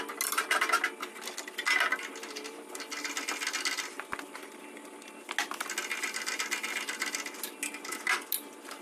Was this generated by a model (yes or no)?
no